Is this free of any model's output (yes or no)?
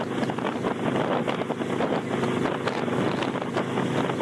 yes